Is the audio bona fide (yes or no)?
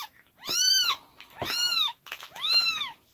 no